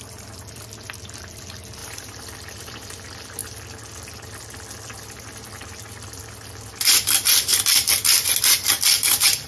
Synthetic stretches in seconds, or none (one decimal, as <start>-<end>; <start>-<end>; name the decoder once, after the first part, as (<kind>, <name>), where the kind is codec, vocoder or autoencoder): 1.8-3.0 (vocoder, BigVGAN v2); 7.5-9.5